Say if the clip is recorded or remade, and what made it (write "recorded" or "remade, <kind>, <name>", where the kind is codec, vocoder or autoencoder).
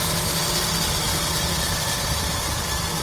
recorded